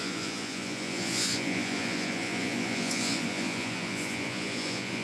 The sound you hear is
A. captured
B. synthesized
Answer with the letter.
B